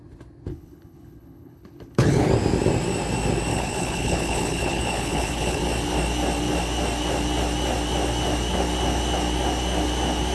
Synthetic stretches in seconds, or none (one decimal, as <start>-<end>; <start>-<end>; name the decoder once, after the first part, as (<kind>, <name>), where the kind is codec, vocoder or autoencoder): 0.5-2.3 (codec, HILCodec); 3.5-5.6